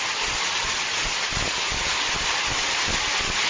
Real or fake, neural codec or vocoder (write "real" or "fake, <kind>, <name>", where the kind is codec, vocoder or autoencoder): fake, vocoder, BigVGAN v2